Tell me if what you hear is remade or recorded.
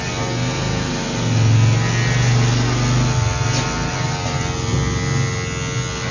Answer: recorded